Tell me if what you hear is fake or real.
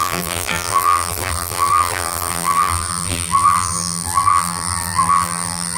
fake